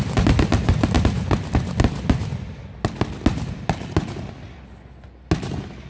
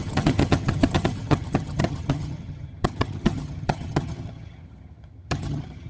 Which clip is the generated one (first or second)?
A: second